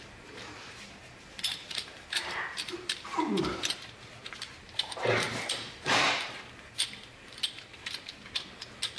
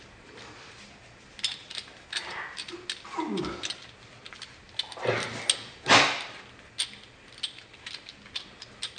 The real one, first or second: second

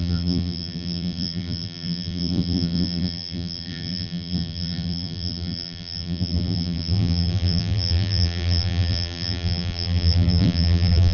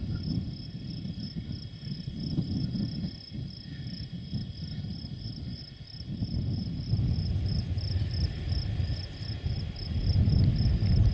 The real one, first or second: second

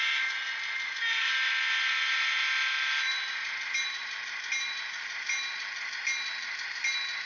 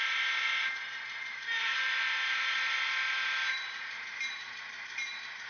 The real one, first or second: first